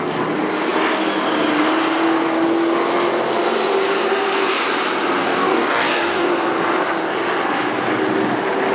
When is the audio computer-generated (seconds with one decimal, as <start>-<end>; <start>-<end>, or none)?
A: 5.2-6.3